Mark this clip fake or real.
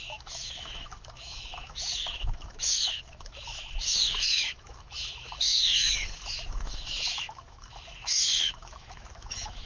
fake